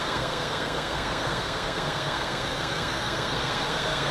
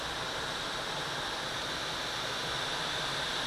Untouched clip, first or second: second